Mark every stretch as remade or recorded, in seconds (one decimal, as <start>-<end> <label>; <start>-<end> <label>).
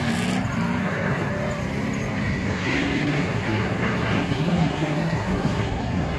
0.0-0.8 recorded; 0.8-1.3 remade; 1.3-2.2 recorded; 2.2-6.2 remade